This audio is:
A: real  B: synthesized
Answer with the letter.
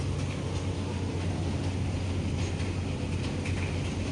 A